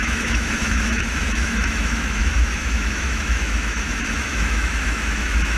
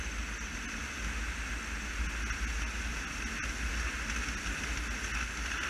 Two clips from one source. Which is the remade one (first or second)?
first